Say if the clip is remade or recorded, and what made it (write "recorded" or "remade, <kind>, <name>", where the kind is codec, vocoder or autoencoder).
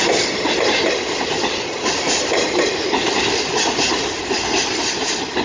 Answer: remade, vocoder, BigVGAN v2